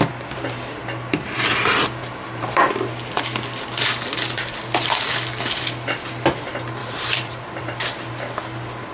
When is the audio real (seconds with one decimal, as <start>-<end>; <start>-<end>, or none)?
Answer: 0.0-2.0; 2.9-6.8; 8.1-8.9